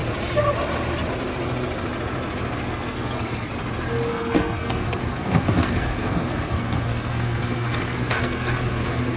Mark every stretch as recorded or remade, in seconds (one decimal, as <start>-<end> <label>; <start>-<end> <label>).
0.0-2.6 recorded; 2.6-3.5 remade; 3.5-4.1 recorded; 4.1-9.2 remade